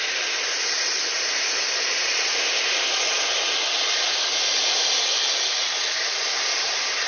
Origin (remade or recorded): recorded